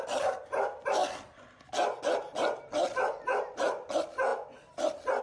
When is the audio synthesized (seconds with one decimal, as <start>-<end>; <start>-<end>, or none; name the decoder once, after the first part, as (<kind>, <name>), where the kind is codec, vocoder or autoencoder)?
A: none